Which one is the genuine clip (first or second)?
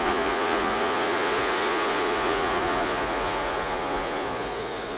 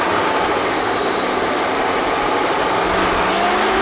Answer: second